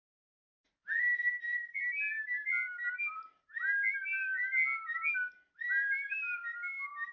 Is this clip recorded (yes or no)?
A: yes